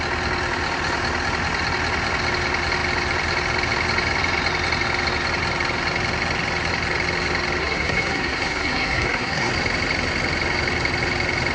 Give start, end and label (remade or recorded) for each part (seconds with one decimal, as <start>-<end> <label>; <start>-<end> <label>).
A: 0.0-7.6 recorded; 7.6-9.5 remade; 9.5-11.5 recorded